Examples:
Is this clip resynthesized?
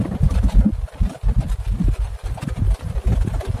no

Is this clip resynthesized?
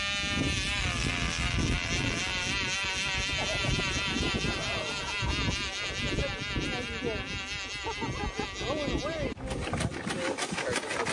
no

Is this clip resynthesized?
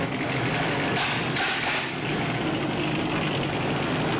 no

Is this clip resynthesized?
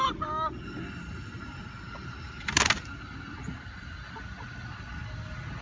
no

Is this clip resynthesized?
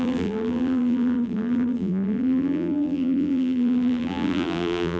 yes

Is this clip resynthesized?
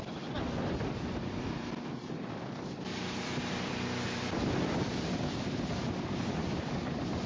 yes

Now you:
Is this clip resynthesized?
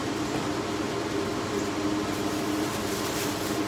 no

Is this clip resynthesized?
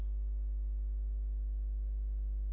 no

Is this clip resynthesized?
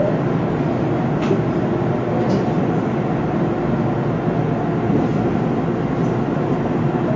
no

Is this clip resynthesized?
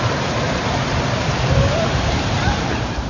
yes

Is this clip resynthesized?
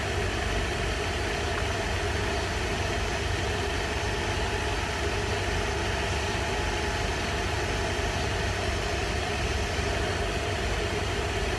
no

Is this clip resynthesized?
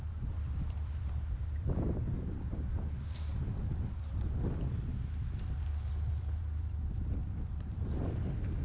yes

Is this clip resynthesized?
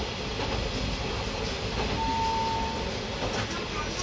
no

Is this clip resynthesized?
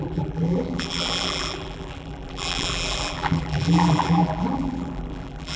yes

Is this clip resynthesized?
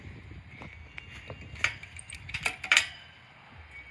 no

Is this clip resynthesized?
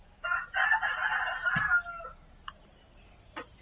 no